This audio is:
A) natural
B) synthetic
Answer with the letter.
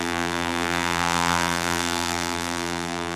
B